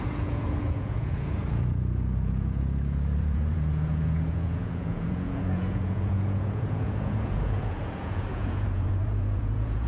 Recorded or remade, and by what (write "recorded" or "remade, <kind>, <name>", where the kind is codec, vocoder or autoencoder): remade, vocoder, Vocos